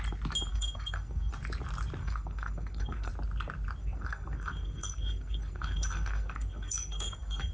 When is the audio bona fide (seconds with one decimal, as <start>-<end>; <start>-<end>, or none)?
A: 0.0-0.5; 1.3-2.0; 3.1-3.8